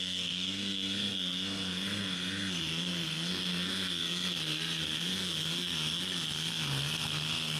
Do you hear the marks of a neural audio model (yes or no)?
yes